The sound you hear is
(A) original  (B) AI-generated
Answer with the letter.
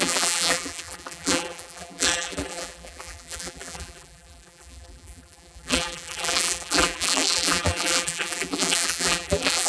B